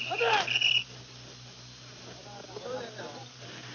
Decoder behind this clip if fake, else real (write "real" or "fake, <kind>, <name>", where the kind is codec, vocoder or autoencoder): real